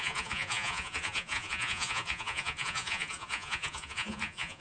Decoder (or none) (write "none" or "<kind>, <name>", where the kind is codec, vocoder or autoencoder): vocoder, Vocos